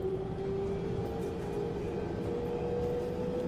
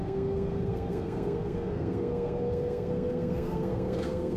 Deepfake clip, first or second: second